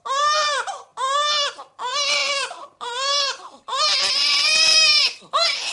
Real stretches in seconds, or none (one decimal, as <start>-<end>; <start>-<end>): 0.9-1.5